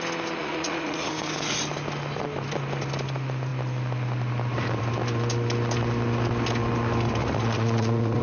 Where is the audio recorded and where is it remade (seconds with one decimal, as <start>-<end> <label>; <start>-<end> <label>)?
0.0-0.4 recorded; 0.4-1.1 remade; 1.1-7.2 recorded; 7.2-8.2 remade